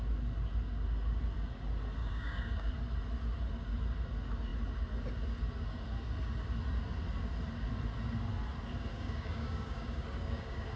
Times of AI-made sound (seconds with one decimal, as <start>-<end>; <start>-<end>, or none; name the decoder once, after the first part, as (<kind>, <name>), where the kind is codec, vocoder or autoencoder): 2.0-2.7 (codec, DAC); 8.9-10.8